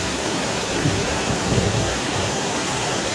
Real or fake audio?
fake